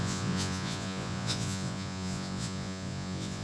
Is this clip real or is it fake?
fake